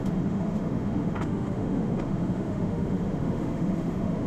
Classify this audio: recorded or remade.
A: remade